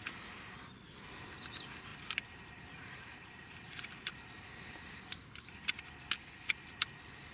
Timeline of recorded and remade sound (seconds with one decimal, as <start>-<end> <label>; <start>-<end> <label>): 0.0-1.9 recorded; 1.9-5.8 remade; 5.8-7.3 recorded